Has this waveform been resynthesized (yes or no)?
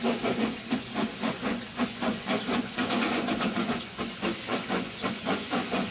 yes